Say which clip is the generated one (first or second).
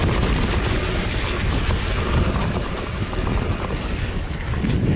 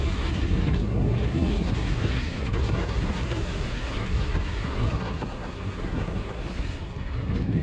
second